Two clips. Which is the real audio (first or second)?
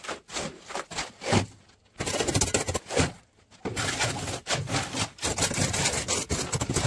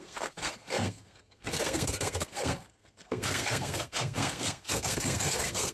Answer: first